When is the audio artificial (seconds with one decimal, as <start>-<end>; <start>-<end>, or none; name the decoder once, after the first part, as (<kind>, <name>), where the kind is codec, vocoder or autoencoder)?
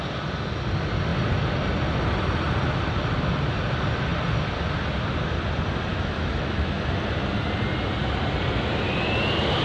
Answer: 5.9-6.8 (autoencoder, DAC-VAE)